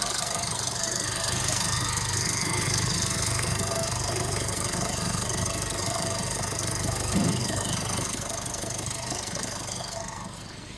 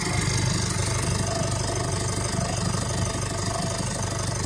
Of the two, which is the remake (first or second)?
first